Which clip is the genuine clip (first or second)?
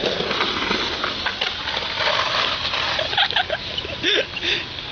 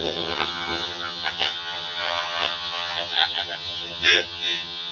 first